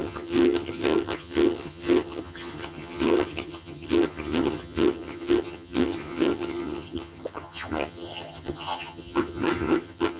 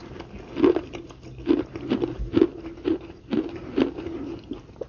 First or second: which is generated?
first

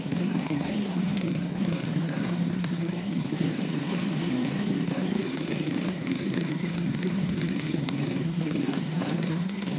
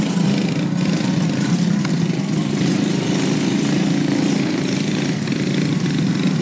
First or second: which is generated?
first